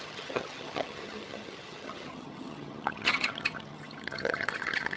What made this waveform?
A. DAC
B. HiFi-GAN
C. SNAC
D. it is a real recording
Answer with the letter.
B